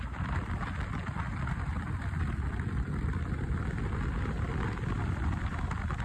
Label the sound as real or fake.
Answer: fake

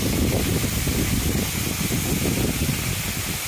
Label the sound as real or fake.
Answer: real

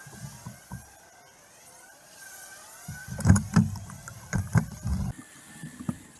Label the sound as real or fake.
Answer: fake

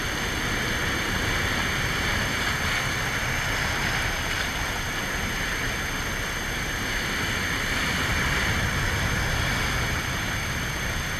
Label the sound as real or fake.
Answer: real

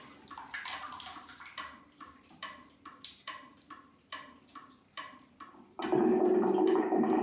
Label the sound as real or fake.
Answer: fake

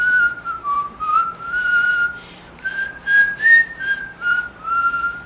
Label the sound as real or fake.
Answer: fake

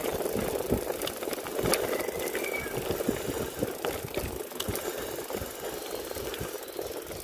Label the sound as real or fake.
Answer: real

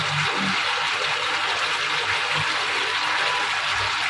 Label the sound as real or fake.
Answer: real